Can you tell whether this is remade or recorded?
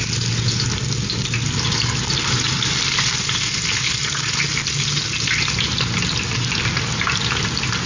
recorded